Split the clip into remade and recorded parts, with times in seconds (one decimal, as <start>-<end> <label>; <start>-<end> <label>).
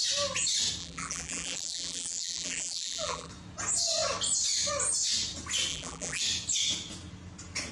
0.0-0.8 recorded; 0.8-3.3 remade; 3.3-5.7 recorded; 5.7-6.2 remade; 6.2-7.7 recorded